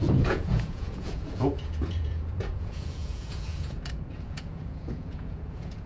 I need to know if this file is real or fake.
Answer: fake